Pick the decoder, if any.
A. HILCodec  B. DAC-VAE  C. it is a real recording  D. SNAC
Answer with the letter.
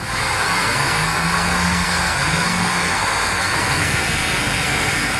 D